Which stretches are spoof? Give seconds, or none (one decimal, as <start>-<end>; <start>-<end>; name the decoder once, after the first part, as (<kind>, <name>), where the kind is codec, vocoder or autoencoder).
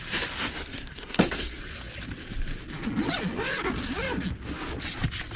0.4-1.6 (codec, SNAC)